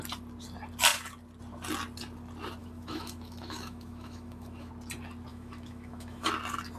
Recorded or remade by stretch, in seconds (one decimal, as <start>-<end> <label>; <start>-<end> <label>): 0.0-2.6 recorded; 2.6-4.7 remade; 4.7-5.3 recorded; 5.3-6.3 remade; 6.3-6.8 recorded